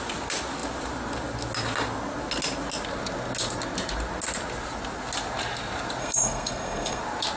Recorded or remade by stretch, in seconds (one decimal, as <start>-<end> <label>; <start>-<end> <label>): 0.0-6.0 recorded; 6.0-7.0 remade; 7.0-7.4 recorded